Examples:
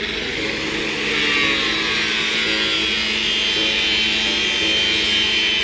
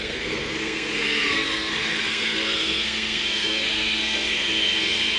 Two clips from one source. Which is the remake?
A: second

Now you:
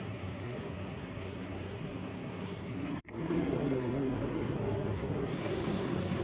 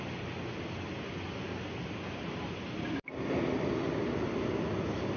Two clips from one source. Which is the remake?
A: first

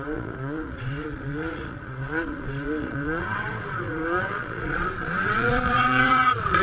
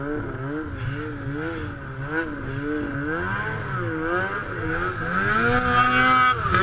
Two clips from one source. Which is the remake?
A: first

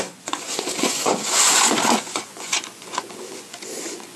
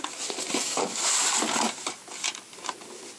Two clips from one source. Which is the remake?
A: first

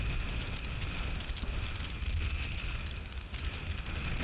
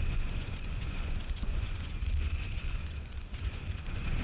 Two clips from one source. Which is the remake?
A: second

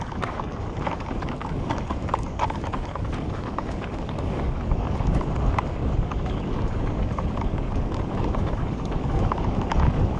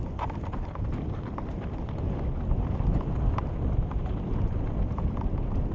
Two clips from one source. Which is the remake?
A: first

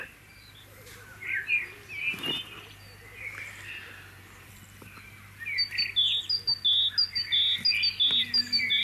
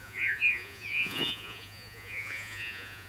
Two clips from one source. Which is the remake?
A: second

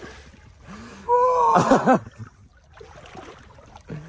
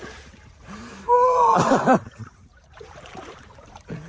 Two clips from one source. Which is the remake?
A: second